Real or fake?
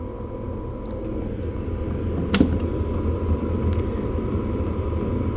real